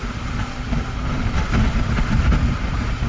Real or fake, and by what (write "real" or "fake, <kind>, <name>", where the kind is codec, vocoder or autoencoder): fake, vocoder, BigVGAN v2